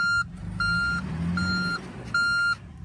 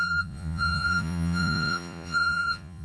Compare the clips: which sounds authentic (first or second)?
first